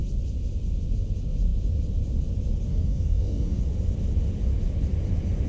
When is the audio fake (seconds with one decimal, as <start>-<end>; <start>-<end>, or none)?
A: 2.7-3.6